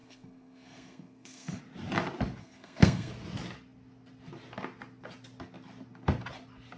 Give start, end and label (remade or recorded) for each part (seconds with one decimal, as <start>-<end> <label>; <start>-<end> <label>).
0.0-1.6 remade; 1.6-2.4 recorded; 2.4-3.1 remade; 3.1-6.8 recorded

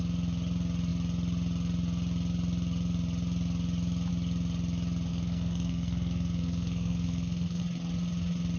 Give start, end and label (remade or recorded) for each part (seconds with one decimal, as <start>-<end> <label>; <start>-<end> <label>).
0.0-5.1 recorded; 5.1-7.6 remade; 7.6-8.6 recorded

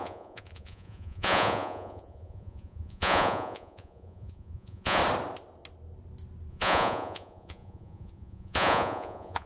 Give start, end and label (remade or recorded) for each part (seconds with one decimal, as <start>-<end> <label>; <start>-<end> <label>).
0.0-5.0 remade; 5.0-6.5 recorded; 6.5-9.5 remade

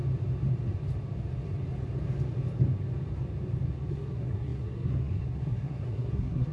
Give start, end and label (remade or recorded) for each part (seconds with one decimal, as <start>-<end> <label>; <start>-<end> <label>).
0.0-3.9 recorded; 3.9-6.5 remade

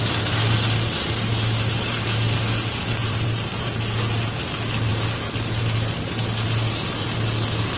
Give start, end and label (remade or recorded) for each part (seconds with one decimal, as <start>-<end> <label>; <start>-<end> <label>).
0.0-3.0 recorded; 3.0-3.8 remade; 3.8-7.8 recorded